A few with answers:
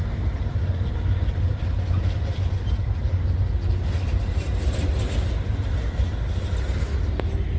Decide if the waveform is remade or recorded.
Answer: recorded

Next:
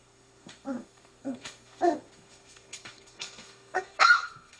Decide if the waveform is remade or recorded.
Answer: remade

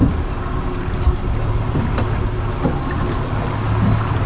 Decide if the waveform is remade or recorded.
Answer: recorded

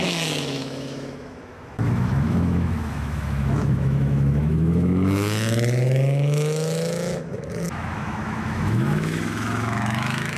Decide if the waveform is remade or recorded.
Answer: remade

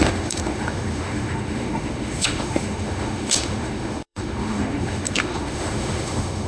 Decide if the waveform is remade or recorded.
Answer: remade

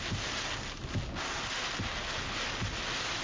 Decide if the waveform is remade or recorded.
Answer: recorded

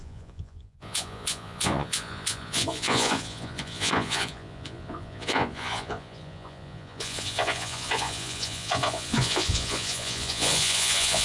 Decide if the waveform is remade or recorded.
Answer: remade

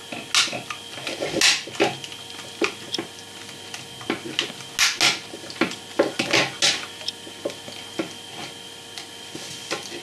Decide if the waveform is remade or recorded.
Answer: recorded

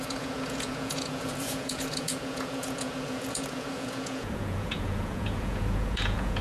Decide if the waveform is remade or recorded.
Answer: remade